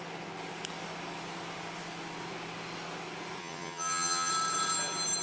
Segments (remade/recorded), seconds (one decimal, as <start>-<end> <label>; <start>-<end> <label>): 0.0-3.4 recorded; 3.4-4.3 remade; 4.3-5.2 recorded